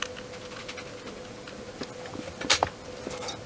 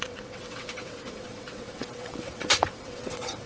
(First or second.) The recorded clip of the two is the first